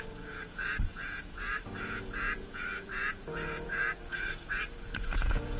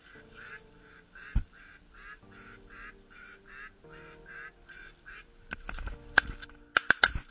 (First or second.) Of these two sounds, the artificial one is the first